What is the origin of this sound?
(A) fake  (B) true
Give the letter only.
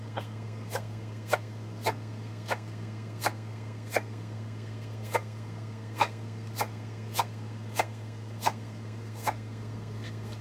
A